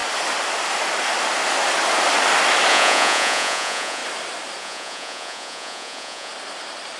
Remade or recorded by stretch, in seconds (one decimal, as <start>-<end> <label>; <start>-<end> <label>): 0.0-2.7 recorded; 2.7-4.0 remade; 4.0-4.6 recorded; 4.6-6.3 remade; 6.3-7.0 recorded